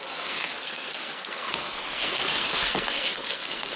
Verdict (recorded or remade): remade